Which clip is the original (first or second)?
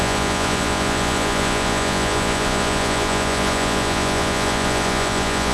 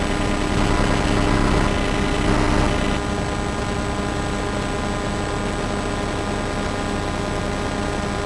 second